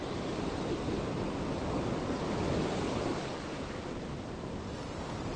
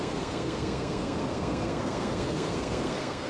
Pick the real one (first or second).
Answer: first